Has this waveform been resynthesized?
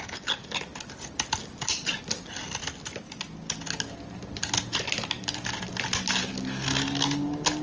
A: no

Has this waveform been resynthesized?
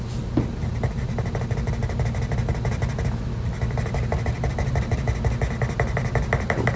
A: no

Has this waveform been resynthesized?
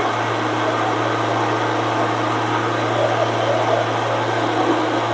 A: no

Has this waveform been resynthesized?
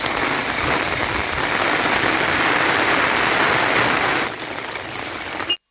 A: no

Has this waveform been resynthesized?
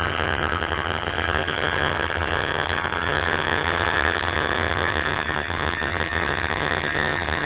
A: yes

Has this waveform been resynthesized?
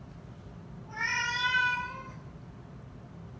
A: no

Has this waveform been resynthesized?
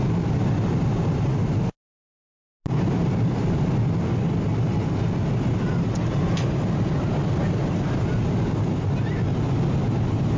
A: no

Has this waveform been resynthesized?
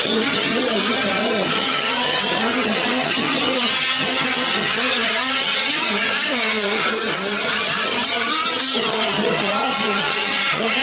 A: yes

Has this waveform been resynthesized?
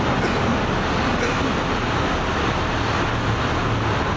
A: no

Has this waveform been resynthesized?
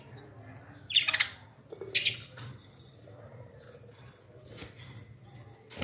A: no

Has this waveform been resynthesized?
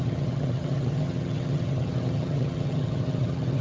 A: yes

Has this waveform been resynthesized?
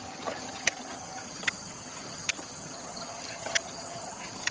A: yes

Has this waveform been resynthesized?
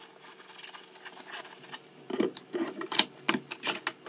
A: no